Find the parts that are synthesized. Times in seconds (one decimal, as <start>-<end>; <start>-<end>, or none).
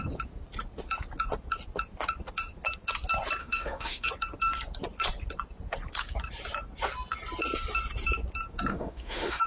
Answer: 3.4-4.1; 8.7-9.5